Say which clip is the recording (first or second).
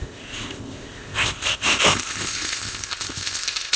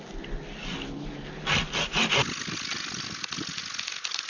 second